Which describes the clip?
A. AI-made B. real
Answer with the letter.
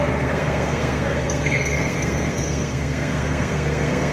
A